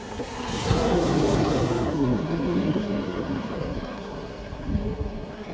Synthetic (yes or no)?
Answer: yes